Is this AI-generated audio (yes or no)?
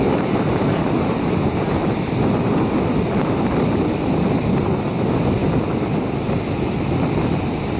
yes